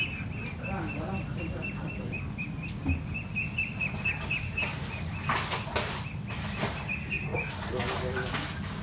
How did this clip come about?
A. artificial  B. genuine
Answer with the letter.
B